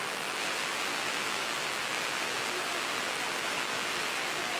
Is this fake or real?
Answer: fake